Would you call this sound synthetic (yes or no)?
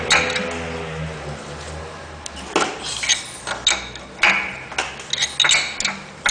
no